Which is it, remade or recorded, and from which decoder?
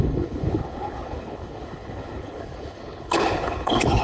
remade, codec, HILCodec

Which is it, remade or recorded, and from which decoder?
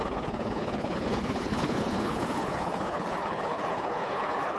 remade, codec, HILCodec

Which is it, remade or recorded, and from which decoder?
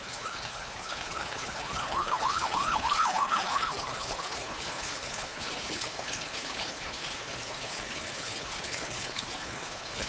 remade, codec, HILCodec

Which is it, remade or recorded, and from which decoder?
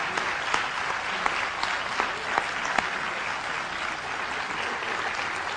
recorded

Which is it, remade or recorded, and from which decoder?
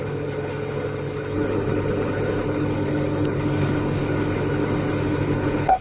remade, codec, HILCodec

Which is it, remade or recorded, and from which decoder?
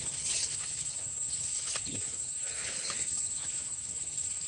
remade, codec, HILCodec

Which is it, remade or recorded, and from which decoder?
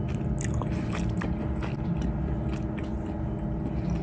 recorded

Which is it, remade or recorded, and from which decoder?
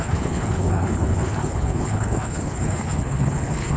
remade, codec, HILCodec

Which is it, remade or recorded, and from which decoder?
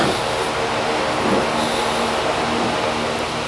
recorded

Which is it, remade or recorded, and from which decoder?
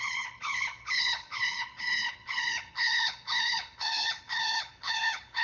remade, codec, HILCodec